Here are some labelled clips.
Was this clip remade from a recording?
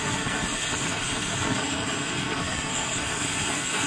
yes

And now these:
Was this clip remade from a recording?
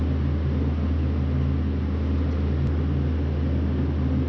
no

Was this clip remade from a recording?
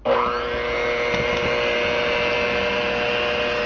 no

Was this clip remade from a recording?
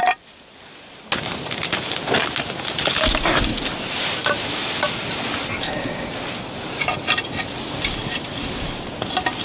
no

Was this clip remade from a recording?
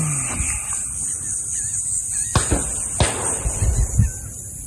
no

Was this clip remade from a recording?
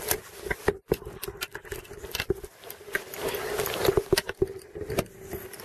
no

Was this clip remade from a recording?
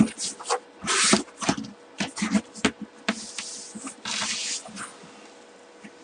no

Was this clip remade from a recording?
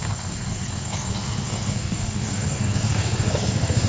yes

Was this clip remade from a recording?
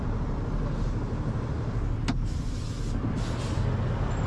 no